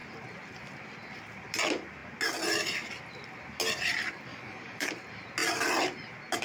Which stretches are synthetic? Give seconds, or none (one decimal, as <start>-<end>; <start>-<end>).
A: 4.3-4.9